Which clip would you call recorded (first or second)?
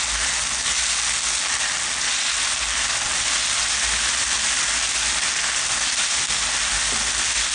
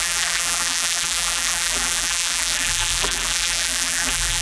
first